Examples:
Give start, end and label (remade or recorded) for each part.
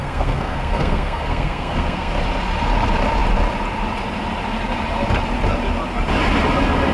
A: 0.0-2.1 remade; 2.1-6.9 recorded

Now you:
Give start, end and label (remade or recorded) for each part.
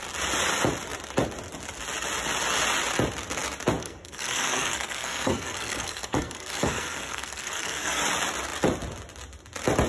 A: 0.0-3.8 recorded; 3.8-8.0 remade; 8.0-9.9 recorded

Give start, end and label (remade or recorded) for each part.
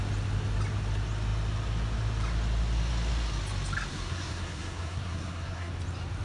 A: 0.0-3.9 recorded; 3.9-5.7 remade; 5.7-6.2 recorded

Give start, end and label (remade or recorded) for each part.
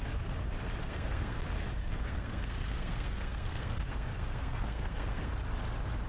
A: 0.0-0.8 recorded; 0.8-1.4 remade; 1.4-1.8 recorded; 1.8-5.3 remade; 5.3-6.1 recorded